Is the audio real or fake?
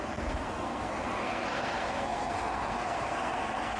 fake